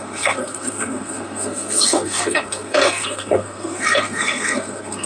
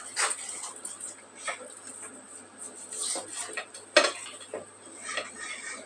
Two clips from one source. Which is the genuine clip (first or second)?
second